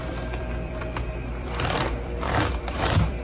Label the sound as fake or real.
fake